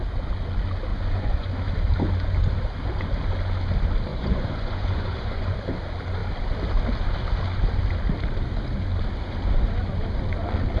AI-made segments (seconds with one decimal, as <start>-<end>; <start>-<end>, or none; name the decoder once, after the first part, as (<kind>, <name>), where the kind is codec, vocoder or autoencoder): 0.9-1.5 (vocoder, Vocos); 4.1-5.6